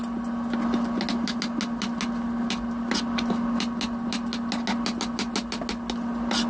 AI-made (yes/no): no